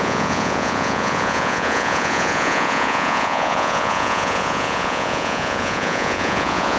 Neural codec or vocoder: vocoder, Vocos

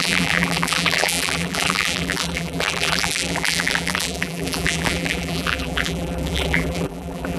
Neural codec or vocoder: vocoder, BigVGAN v2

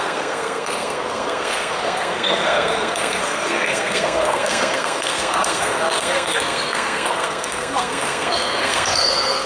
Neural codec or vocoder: codec, SNAC